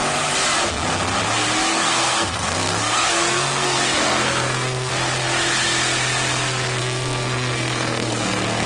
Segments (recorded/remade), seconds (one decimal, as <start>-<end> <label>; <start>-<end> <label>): 0.0-1.7 recorded; 1.7-4.9 remade; 4.9-6.8 recorded; 6.8-8.7 remade